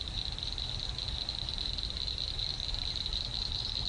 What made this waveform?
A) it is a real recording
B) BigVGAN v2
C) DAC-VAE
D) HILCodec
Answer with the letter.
B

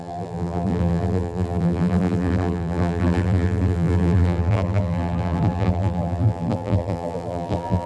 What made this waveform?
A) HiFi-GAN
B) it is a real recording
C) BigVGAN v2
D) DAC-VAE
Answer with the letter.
C